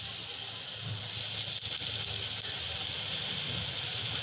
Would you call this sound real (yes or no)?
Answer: yes